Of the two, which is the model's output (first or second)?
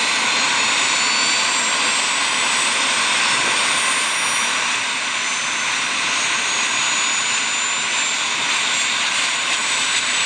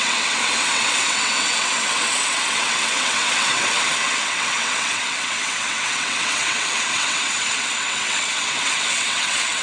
second